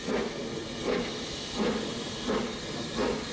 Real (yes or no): yes